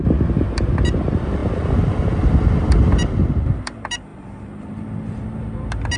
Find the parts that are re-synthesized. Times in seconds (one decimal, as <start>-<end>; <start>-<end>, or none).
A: none